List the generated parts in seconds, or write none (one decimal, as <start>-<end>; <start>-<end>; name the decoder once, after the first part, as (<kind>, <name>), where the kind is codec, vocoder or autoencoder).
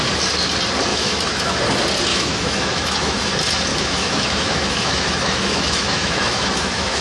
0.9-1.6 (autoencoder, DAC-VAE); 2.1-3.2; 3.7-7.0